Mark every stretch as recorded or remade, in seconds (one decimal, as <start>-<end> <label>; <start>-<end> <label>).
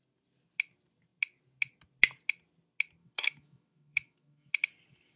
0.0-3.0 recorded; 3.0-4.5 remade; 4.5-5.2 recorded